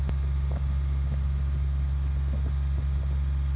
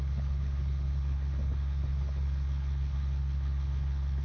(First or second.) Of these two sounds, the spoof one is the second